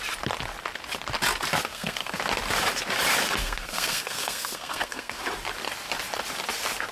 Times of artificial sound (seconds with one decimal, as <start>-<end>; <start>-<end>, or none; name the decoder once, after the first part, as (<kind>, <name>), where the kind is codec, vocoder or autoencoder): 1.7-2.2 (codec, SNAC); 3.4-5.2